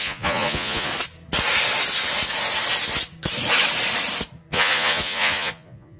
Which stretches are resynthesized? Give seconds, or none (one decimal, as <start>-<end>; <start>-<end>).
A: 0.0-0.9; 4.5-6.0